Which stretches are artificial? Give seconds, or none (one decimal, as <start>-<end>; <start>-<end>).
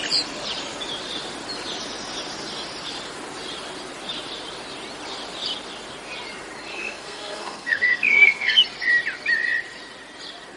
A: 6.7-8.6